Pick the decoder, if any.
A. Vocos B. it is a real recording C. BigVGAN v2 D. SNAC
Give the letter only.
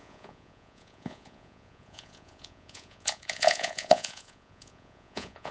A